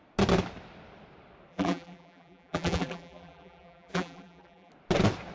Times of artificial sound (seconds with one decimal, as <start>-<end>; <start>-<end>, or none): 1.5-4.7